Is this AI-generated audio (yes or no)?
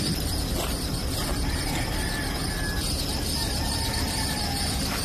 yes